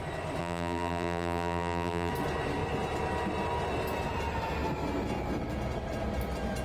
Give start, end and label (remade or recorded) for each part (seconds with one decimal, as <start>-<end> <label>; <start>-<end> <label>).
0.0-0.4 recorded; 0.4-2.1 remade; 2.1-6.6 recorded